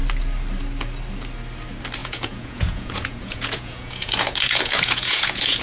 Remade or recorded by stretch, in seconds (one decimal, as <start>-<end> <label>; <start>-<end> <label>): 0.0-2.0 recorded; 2.0-5.6 remade